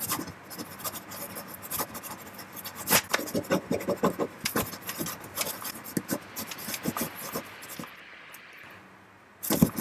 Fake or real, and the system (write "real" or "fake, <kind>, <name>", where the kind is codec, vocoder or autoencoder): real